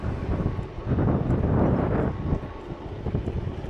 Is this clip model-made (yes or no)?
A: no